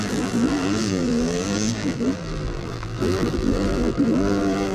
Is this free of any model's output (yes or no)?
no